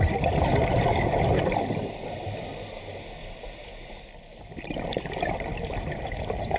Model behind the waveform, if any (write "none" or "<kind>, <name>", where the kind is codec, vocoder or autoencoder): none